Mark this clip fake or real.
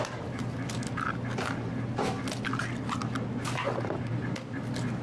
real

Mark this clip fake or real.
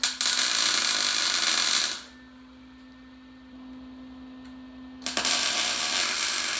real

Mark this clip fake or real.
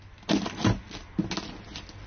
real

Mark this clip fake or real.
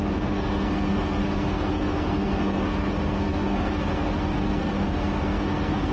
fake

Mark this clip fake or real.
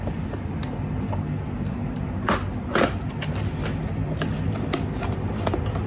real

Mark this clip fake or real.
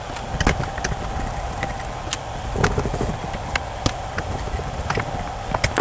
real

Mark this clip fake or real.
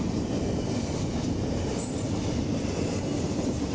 real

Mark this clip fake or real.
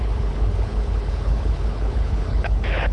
fake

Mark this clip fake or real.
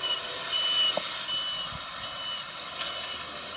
real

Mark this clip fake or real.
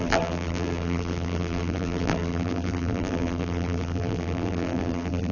fake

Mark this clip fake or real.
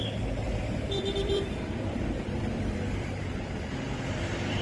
fake